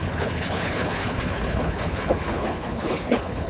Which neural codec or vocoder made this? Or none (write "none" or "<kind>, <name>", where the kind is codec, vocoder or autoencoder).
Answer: codec, HILCodec